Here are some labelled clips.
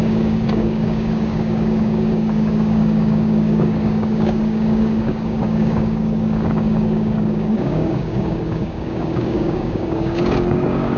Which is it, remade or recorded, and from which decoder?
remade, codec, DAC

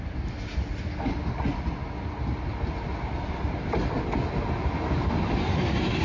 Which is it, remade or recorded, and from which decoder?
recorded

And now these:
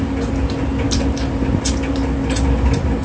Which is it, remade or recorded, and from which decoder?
recorded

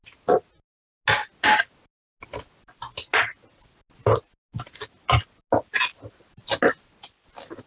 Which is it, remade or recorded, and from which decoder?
recorded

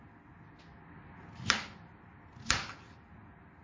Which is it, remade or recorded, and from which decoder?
recorded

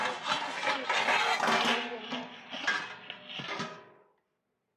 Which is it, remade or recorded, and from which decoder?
recorded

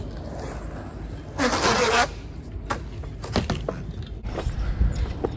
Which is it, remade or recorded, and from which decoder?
recorded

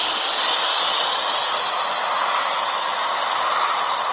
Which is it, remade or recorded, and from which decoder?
recorded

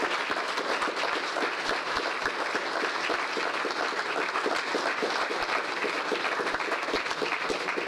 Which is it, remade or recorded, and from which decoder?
recorded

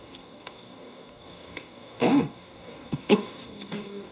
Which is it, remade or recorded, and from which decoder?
remade, codec, DAC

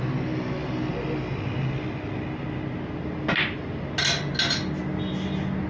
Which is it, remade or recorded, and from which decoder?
recorded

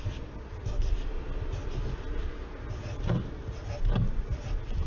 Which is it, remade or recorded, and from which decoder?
recorded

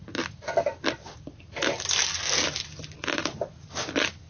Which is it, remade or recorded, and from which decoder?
recorded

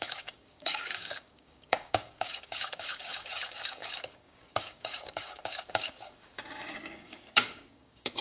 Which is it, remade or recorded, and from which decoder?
remade, codec, DAC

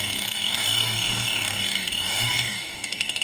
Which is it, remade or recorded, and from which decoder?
remade, codec, DAC